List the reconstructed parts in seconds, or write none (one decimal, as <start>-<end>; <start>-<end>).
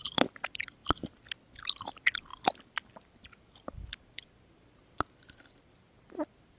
0.0-0.8; 1.7-6.6